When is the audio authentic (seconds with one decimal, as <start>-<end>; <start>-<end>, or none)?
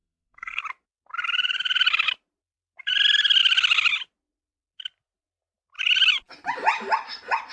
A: 0.6-7.5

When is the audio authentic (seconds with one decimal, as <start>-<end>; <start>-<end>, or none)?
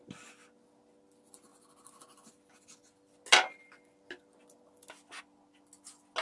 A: 0.0-6.2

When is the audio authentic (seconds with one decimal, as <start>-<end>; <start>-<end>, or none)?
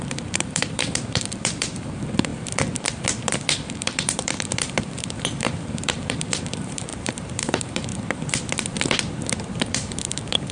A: 2.3-3.7; 7.9-9.6